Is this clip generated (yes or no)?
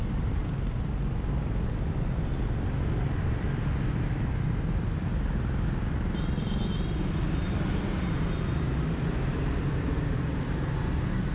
no